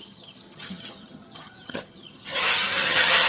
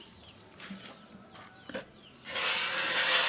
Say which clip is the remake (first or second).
first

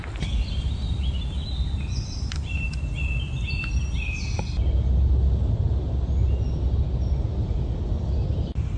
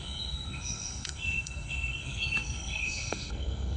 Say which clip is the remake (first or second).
second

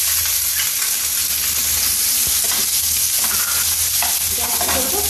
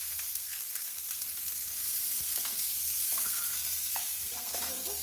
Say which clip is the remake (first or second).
second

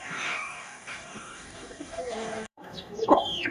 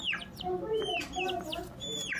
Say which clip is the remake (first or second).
first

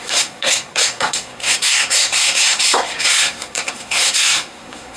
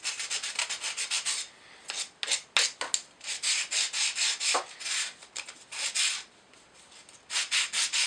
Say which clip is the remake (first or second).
first